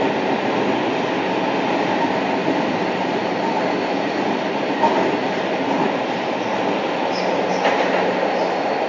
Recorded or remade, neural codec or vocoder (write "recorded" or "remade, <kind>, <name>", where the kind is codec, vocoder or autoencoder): recorded